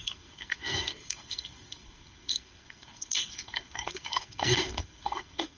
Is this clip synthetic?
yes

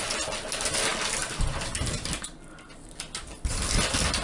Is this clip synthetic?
no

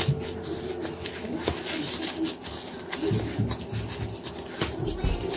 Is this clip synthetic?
no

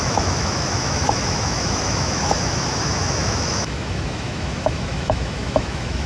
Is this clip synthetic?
yes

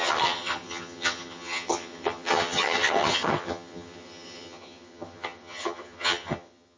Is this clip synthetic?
yes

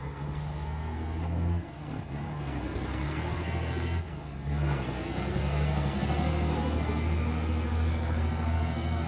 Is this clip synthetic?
yes